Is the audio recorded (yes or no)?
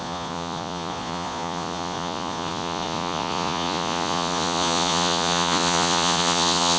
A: no